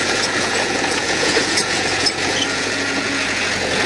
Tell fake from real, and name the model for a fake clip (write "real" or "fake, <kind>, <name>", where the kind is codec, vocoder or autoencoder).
fake, vocoder, Vocos